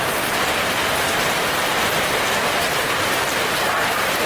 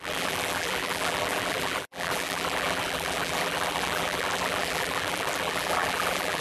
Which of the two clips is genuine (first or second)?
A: first